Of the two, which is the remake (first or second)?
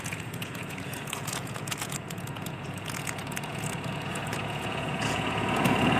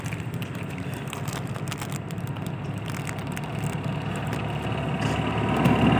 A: first